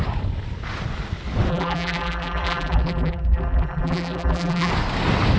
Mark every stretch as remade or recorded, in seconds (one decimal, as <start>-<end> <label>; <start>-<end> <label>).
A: 0.0-1.5 recorded; 1.5-4.7 remade; 4.7-5.4 recorded